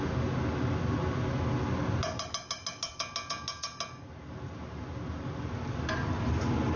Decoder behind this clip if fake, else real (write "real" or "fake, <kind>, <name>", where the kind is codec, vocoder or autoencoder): real